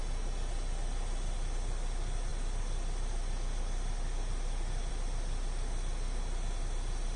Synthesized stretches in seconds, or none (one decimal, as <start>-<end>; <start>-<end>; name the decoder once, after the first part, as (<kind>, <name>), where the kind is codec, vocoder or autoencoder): none